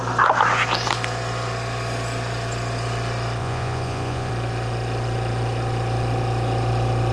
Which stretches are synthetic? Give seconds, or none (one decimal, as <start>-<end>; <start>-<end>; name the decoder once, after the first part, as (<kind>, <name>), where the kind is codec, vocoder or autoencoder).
3.4-4.3 (vocoder, Vocos)